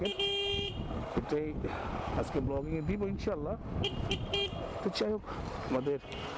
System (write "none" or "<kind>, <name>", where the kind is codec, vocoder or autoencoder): none